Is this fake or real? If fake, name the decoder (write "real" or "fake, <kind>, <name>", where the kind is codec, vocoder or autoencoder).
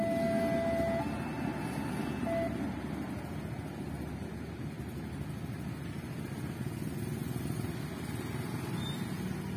real